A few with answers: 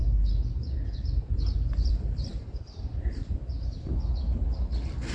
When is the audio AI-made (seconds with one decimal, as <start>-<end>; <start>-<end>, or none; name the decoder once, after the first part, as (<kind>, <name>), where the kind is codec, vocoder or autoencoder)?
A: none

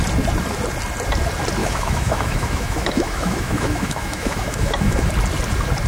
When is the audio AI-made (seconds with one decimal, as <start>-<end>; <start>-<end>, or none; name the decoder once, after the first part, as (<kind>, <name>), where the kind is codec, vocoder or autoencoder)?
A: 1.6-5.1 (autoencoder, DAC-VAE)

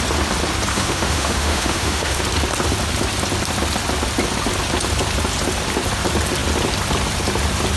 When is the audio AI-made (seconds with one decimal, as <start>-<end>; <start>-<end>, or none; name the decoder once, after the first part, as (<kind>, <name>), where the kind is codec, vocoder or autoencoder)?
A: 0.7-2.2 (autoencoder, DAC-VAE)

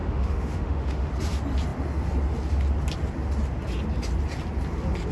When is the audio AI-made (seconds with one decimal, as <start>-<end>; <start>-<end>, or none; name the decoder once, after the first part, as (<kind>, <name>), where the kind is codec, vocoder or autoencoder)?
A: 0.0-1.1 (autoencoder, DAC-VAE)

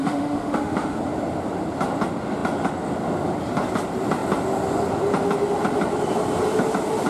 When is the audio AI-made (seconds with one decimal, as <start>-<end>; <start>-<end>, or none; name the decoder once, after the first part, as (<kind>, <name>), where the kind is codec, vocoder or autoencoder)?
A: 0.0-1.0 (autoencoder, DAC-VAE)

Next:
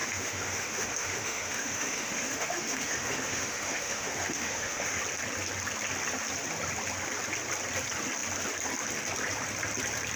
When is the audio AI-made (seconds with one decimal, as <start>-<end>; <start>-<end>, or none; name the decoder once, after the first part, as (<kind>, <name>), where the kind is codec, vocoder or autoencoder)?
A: 0.0-5.0 (autoencoder, DAC-VAE)